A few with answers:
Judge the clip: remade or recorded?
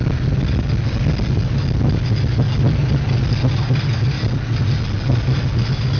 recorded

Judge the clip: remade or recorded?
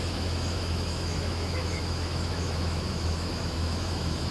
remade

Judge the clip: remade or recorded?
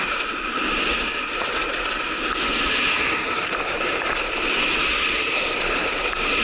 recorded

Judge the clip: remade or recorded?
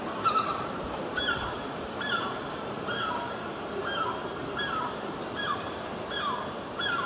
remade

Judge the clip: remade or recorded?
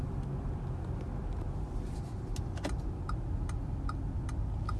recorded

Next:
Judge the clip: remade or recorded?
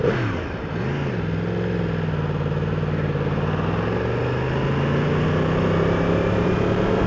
recorded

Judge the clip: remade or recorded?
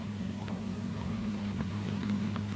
remade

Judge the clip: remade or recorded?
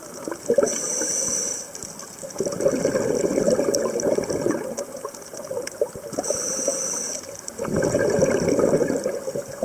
recorded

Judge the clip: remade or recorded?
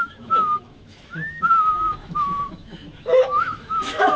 remade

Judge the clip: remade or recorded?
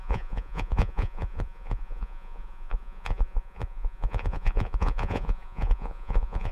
remade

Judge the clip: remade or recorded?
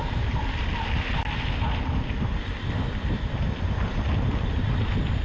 recorded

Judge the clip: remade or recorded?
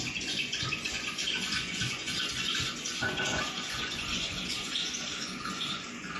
remade